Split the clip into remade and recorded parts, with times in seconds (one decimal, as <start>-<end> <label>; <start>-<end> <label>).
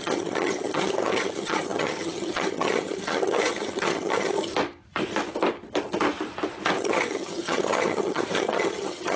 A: 0.0-4.5 remade; 4.5-6.8 recorded; 6.8-9.2 remade